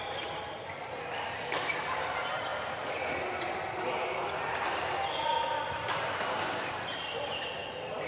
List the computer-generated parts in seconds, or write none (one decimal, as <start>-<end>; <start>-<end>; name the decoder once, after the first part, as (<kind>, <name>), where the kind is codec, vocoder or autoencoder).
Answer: none